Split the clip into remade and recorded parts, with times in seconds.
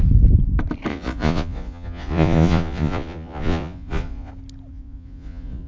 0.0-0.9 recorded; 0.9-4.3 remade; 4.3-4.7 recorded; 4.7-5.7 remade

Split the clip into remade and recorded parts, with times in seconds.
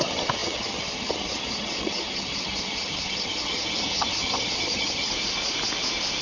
0.0-5.1 remade; 5.1-6.2 recorded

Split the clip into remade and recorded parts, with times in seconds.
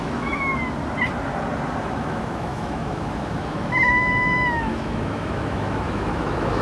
0.0-0.5 remade; 0.5-1.8 recorded; 1.8-6.6 remade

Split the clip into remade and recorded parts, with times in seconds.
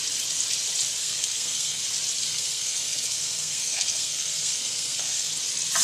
0.0-1.0 recorded; 1.0-1.8 remade; 1.8-2.3 recorded; 2.3-5.3 remade; 5.3-5.8 recorded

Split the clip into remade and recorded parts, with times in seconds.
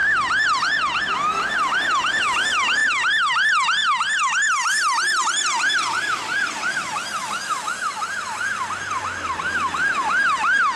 0.0-10.8 recorded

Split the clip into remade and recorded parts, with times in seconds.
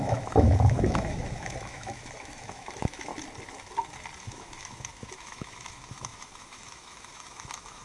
0.0-3.1 remade; 3.1-4.2 recorded; 4.2-7.8 remade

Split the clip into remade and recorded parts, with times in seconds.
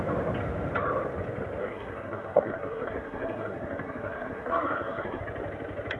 0.0-1.6 recorded; 1.6-5.2 remade; 5.2-6.0 recorded